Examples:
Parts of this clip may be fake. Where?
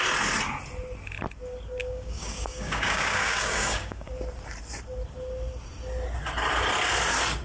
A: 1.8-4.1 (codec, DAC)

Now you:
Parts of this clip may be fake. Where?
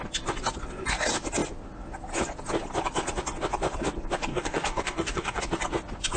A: 4.3-5.4 (codec, DAC)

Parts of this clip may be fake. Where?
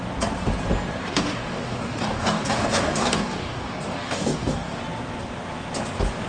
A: 1.0-4.8 (codec, DAC)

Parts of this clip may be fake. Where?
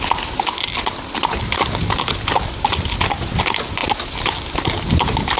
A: none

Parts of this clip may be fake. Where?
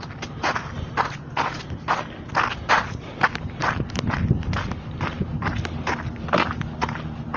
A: none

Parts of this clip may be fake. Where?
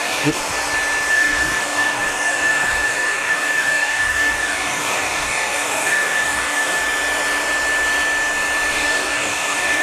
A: 0.0-0.4 (codec, DAC); 1.1-6.8; 8.7-9.8